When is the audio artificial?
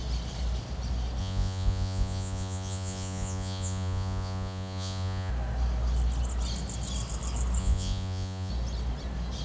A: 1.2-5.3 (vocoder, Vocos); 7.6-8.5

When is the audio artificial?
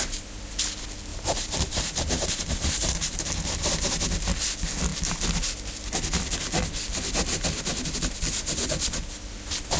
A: 1.1-3.2 (vocoder, BigVGAN v2)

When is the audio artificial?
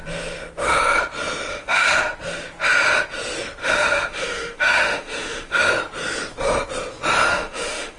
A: 1.5-2.0 (autoencoder, DAC-VAE); 3.6-5.7; 7.3-8.0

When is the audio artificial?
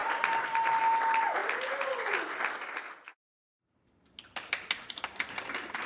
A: 0.0-0.8 (vocoder, BigVGAN v2)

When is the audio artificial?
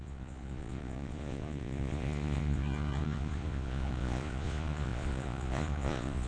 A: 0.0-6.3 (vocoder, Vocos)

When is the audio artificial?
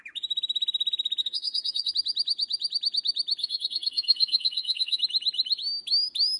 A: 1.2-1.9 (codec, SNAC); 3.4-5.0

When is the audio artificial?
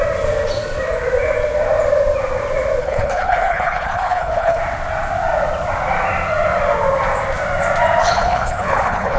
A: 2.8-4.6 (codec, HILCodec); 8.0-9.2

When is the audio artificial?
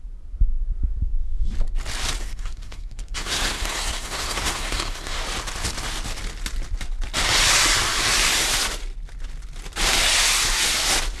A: 2.2-5.2 (codec, SNAC)